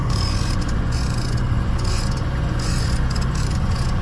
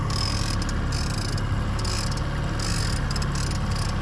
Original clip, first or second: second